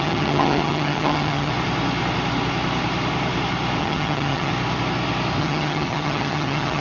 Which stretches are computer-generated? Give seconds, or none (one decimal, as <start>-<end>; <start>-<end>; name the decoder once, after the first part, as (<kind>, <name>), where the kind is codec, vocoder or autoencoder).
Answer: 0.0-1.5 (vocoder, HiFi-GAN); 3.8-4.5; 5.4-6.8